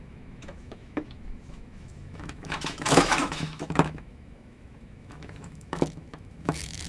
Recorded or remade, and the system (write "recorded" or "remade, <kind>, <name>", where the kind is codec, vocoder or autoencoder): remade, autoencoder, DAC-VAE